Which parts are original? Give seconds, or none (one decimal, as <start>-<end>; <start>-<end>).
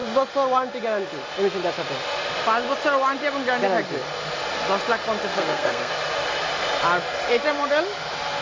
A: 0.0-5.3; 5.9-8.4